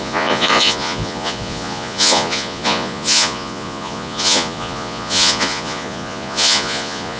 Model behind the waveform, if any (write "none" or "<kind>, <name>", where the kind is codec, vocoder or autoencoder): vocoder, Vocos